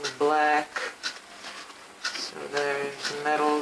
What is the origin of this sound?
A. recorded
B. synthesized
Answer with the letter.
A